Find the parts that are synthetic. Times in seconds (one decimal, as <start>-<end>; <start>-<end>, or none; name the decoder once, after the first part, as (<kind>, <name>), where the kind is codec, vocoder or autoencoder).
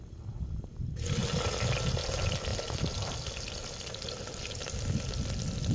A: none